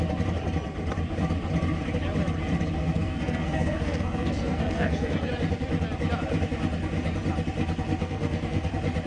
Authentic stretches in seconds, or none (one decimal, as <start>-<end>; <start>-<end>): 0.0-2.8; 5.3-8.0; 8.7-9.1